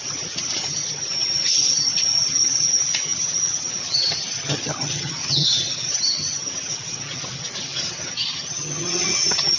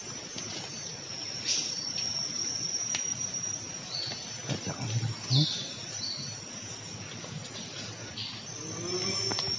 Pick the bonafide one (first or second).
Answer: second